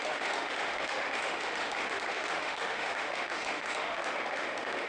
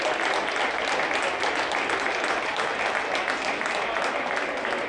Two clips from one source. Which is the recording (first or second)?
second